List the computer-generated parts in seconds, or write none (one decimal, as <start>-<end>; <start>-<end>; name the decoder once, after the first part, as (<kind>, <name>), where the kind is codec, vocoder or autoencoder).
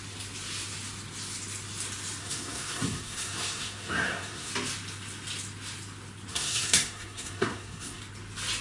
2.2-4.5 (codec, SNAC); 6.3-8.0